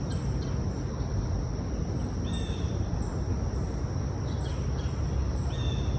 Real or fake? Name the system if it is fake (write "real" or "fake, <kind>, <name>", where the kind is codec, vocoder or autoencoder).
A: real